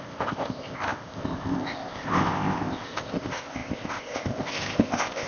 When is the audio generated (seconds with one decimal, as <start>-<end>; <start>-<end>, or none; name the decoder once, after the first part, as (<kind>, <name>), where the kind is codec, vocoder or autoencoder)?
0.0-5.3 (codec, ZipCodec)